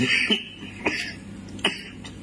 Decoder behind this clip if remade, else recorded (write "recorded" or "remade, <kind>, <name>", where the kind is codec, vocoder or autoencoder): recorded